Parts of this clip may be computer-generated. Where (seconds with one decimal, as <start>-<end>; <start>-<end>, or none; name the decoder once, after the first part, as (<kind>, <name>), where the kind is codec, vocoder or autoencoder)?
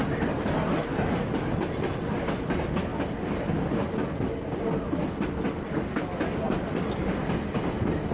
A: none